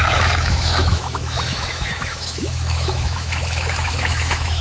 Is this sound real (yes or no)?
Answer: no